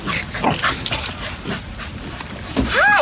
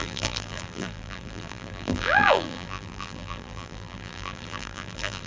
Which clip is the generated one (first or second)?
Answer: second